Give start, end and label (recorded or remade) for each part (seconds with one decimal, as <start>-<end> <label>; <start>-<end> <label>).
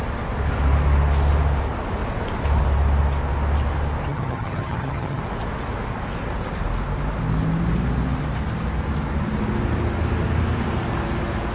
0.0-4.1 recorded; 4.1-5.2 remade; 5.2-11.5 recorded